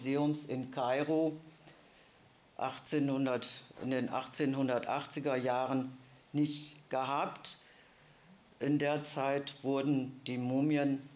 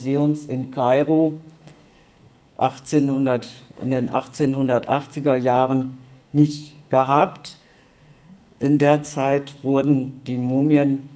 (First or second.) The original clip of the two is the first